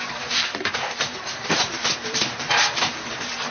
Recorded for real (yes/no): no